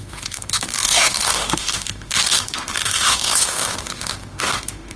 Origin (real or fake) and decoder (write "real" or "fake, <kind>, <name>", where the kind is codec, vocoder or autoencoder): fake, autoencoder, DAC-VAE